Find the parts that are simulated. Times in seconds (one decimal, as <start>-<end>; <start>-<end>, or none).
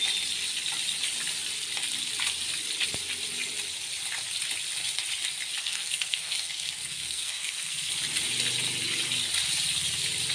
5.6-7.9